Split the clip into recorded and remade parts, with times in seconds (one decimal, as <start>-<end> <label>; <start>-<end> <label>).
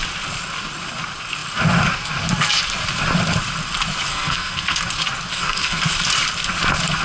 0.0-4.1 recorded; 4.1-4.8 remade; 4.8-5.3 recorded; 5.3-5.8 remade; 5.8-7.0 recorded